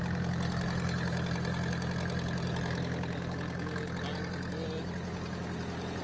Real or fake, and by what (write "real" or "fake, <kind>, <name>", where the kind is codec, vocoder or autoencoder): real